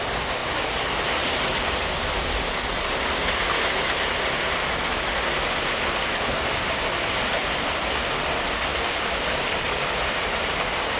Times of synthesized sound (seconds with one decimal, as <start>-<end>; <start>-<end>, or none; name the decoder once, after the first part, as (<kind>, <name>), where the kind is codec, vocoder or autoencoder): 0.0-0.4 (vocoder, BigVGAN v2); 5.6-11.0

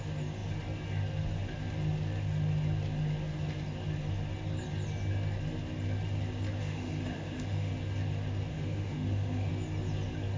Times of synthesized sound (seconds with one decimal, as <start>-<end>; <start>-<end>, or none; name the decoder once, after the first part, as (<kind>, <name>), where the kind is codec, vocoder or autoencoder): 6.6-7.7 (autoencoder, DAC-VAE); 8.5-9.5

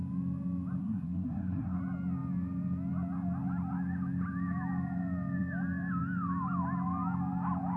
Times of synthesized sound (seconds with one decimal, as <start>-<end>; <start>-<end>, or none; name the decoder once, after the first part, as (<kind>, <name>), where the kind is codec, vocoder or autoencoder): 0.8-1.8 (codec, SNAC)

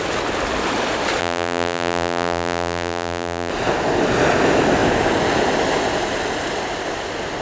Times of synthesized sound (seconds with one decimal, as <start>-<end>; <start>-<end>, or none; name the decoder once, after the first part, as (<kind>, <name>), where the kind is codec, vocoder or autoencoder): 1.2-3.5 (vocoder, BigVGAN v2)

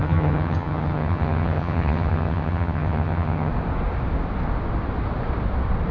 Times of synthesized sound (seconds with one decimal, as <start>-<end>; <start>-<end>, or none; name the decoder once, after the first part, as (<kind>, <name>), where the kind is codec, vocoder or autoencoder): 0.0-3.5 (vocoder, HiFi-GAN)